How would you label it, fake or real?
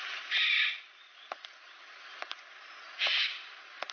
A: fake